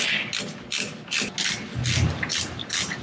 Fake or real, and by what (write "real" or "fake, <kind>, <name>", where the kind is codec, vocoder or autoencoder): real